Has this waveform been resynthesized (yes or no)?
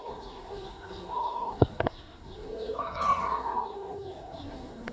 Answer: yes